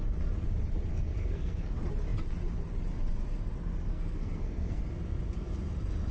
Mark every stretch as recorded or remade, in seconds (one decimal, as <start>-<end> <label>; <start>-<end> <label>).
0.0-0.9 recorded; 0.9-1.7 remade; 1.7-3.9 recorded; 3.9-4.8 remade; 4.8-6.1 recorded